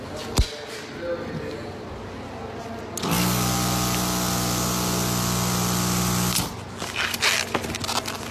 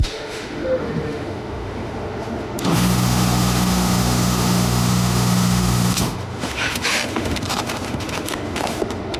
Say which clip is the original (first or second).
first